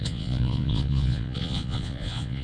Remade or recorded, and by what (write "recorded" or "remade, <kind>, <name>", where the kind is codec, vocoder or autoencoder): remade, vocoder, Vocos